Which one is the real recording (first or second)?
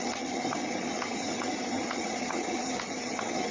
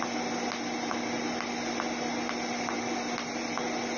second